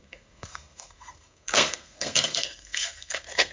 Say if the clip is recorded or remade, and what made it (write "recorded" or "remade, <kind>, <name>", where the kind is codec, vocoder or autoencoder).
remade, codec, SNAC